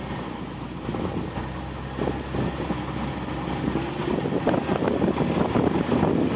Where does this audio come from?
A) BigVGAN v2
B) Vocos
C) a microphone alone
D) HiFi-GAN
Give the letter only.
C